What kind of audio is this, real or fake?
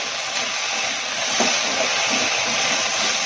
real